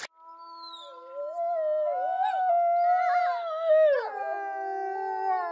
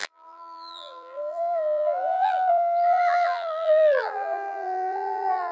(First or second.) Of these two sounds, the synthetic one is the second